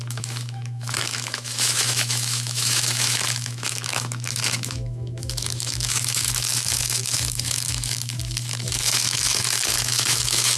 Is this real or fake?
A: fake